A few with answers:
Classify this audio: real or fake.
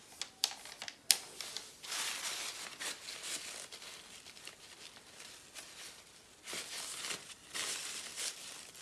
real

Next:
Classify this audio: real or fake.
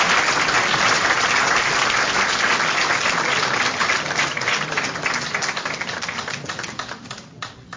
real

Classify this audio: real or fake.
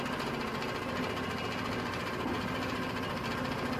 real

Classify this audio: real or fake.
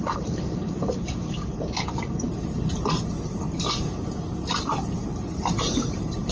fake